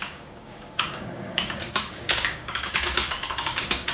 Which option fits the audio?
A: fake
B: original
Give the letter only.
A